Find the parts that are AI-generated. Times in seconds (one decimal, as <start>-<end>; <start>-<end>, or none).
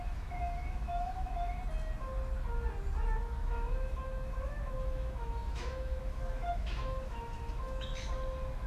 0.0-1.6; 3.4-7.9